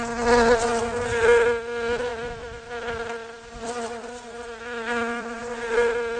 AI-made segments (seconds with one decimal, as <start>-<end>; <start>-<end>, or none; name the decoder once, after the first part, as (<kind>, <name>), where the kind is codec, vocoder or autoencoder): 2.1-5.4 (vocoder, BigVGAN v2)